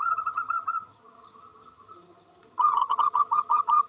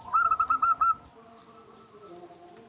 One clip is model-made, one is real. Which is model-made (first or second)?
first